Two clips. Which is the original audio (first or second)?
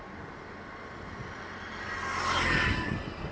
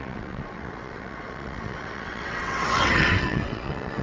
first